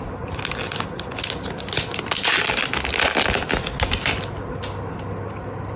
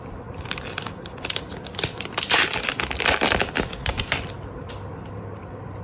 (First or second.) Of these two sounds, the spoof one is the second